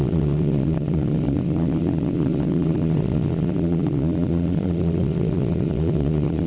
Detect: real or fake fake